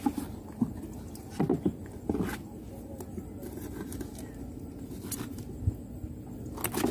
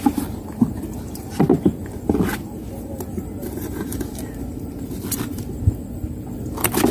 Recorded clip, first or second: first